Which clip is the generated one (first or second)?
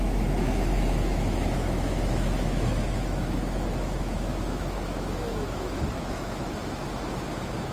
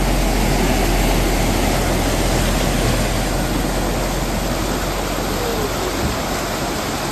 first